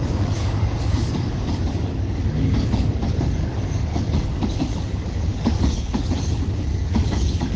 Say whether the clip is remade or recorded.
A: remade